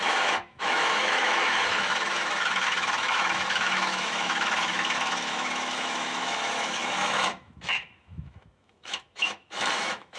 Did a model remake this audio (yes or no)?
yes